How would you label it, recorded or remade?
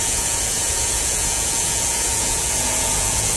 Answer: remade